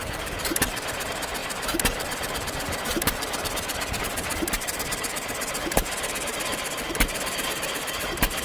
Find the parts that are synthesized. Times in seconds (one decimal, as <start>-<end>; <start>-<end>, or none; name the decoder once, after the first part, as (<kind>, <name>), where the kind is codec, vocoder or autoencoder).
0.0-8.4 (vocoder, BigVGAN v2)

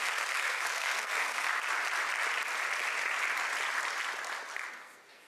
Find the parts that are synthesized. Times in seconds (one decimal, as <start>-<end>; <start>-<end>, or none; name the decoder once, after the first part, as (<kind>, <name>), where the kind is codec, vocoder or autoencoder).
0.0-1.5 (codec, SNAC); 4.7-5.3

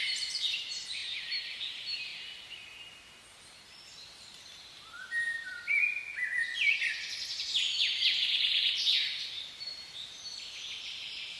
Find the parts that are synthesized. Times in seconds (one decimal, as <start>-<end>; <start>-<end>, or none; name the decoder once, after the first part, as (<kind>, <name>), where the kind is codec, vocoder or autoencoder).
0.0-2.1 (vocoder, BigVGAN v2); 3.4-5.5; 7.5-9.7; 10.8-11.4

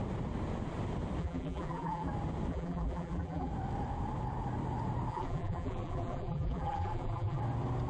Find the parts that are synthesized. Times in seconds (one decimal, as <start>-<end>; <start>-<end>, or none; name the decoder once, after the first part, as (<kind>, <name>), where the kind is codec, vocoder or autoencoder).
1.2-2.1 (vocoder, BigVGAN v2); 2.5-3.5; 5.1-7.4

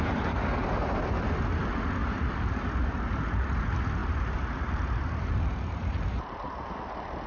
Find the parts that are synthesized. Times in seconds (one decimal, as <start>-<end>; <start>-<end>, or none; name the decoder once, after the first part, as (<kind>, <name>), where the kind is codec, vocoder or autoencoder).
2.0-3.6 (vocoder, BigVGAN v2); 4.0-6.2

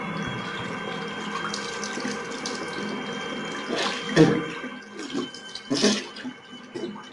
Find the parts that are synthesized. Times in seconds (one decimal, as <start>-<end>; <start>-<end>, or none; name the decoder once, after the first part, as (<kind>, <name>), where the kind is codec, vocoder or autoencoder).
none

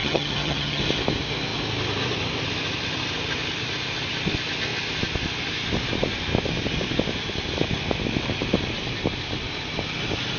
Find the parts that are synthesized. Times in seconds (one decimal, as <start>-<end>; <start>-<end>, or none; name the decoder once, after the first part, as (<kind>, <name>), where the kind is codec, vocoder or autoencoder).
0.0-0.8 (vocoder, HiFi-GAN)